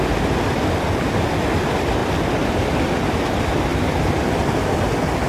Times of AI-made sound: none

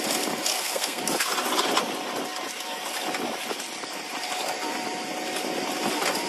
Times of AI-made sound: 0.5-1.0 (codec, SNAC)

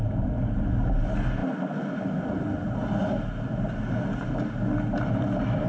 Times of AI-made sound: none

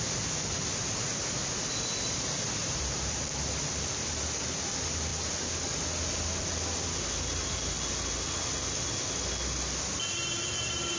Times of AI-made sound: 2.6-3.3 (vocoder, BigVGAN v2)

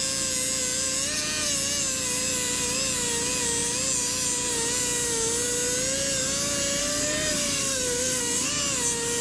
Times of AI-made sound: 6.8-8.5 (codec, SNAC)

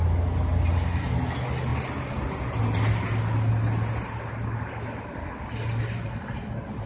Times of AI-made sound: none

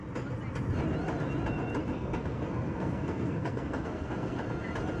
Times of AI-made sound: 1.8-4.4 (codec, SNAC)